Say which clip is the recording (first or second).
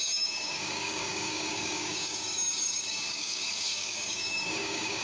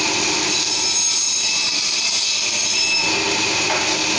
second